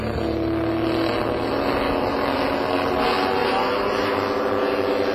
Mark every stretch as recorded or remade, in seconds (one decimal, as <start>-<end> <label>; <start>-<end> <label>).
0.0-3.4 recorded; 3.4-4.1 remade; 4.1-5.1 recorded